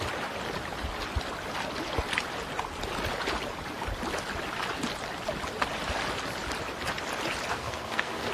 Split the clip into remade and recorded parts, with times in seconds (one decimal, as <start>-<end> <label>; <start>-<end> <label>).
0.0-7.5 recorded; 7.5-8.3 remade